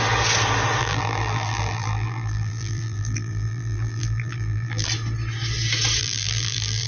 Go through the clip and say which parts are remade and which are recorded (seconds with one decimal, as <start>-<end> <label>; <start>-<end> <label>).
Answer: 0.0-0.8 recorded; 0.8-4.9 remade; 4.9-6.0 recorded; 6.0-6.9 remade